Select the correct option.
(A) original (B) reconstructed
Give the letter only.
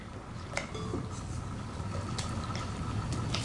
A